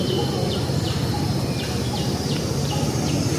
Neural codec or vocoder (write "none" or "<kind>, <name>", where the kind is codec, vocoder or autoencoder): none